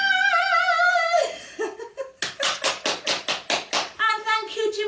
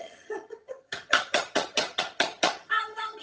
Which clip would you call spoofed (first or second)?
second